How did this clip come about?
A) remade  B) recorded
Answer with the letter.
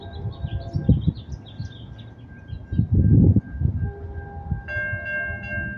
B